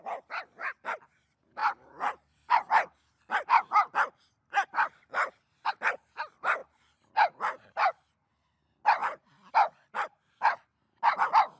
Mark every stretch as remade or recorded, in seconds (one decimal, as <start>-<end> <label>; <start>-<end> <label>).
0.0-11.6 recorded